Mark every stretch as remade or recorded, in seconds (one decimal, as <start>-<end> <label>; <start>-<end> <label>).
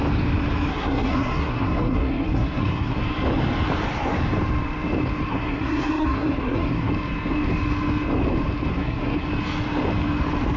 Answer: 0.0-0.7 recorded; 0.7-3.0 remade; 3.0-5.3 recorded; 5.3-6.9 remade; 6.9-8.7 recorded; 8.7-9.3 remade; 9.3-10.6 recorded